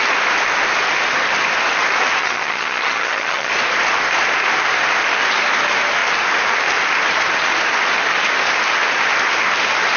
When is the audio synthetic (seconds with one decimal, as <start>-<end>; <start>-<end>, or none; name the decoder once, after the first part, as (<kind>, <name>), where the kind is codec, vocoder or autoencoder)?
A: 2.2-3.5 (vocoder, HiFi-GAN)